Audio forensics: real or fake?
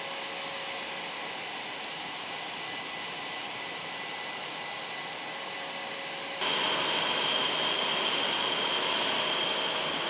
real